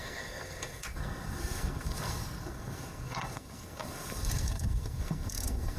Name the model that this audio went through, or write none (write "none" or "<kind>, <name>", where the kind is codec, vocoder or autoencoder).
codec, SNAC